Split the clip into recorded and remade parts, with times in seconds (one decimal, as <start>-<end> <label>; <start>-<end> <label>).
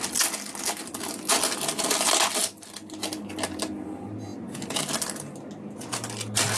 0.0-6.6 recorded